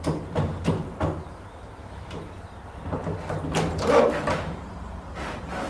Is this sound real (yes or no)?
yes